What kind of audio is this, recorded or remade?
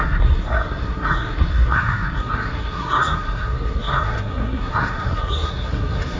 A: remade